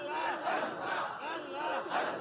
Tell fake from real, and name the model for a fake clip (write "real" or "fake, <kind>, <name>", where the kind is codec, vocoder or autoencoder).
real